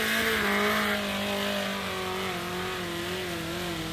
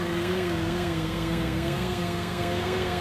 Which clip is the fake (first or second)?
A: second